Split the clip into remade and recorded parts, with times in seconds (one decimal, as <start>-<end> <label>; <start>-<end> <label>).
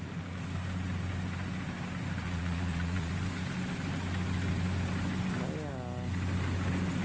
0.0-2.2 recorded; 2.2-3.1 remade; 3.1-7.0 recorded